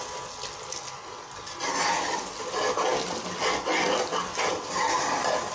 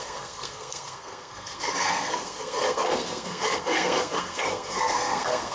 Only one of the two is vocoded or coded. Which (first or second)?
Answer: second